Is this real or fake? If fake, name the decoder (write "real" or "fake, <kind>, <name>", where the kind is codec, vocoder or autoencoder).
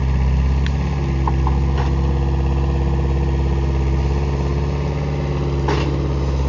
real